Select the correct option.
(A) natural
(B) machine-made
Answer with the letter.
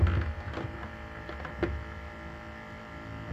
A